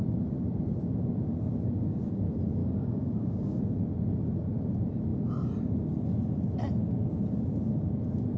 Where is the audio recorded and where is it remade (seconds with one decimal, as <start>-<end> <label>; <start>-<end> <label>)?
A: 0.0-2.6 recorded; 2.6-3.6 remade; 3.6-8.4 recorded